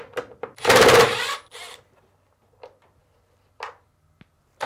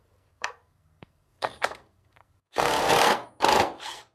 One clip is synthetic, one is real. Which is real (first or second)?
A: first